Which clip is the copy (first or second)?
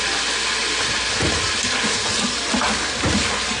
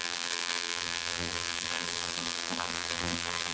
second